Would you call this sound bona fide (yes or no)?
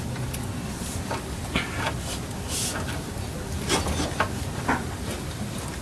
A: yes